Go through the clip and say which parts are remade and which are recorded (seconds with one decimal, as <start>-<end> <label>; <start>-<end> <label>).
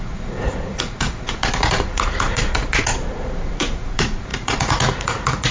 0.0-5.5 remade